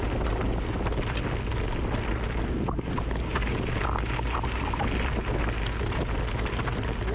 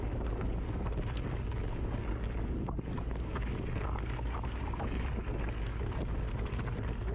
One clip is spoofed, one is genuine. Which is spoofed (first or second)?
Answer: second